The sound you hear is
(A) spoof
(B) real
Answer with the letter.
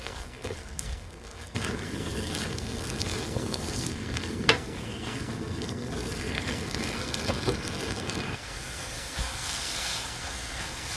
A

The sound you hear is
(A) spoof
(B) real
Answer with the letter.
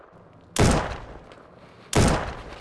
B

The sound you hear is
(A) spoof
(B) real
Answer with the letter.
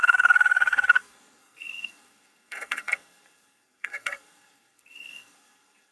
A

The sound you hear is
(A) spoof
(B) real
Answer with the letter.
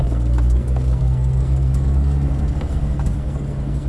A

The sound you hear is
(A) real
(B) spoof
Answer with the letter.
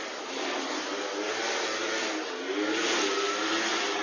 A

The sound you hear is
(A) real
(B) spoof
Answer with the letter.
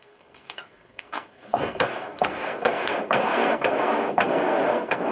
B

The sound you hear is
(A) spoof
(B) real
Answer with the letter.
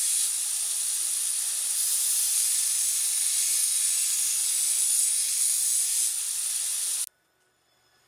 B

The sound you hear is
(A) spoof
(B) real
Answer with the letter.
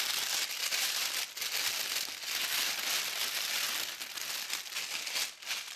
B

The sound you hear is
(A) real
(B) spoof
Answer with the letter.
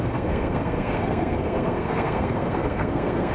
B